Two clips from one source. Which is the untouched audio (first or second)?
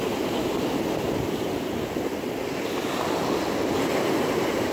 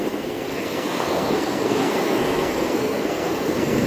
first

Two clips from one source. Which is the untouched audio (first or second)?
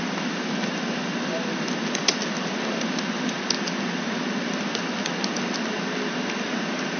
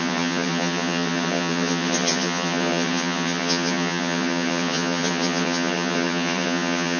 first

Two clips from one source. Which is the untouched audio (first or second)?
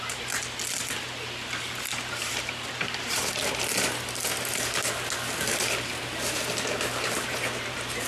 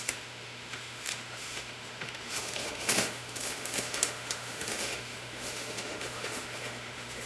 first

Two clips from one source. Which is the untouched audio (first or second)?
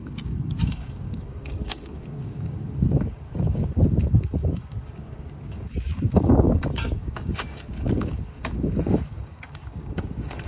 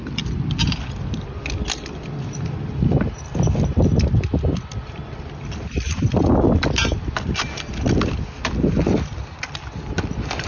second